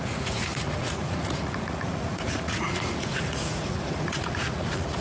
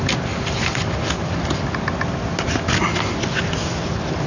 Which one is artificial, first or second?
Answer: first